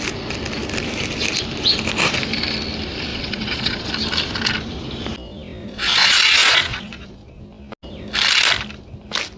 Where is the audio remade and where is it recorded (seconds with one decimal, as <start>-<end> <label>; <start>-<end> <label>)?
0.0-3.1 recorded; 3.1-3.9 remade; 3.9-5.6 recorded; 5.6-7.4 remade; 7.4-9.4 recorded